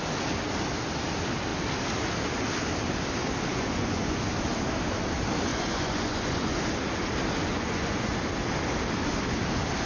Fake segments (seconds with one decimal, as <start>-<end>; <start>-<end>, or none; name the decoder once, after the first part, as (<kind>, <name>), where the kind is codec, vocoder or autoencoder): 3.5-4.2 (vocoder, Vocos); 5.5-6.6; 7.5-8.1